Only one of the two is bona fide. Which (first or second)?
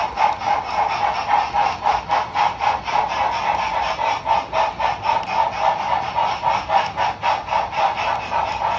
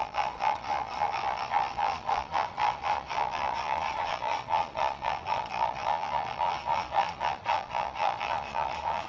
first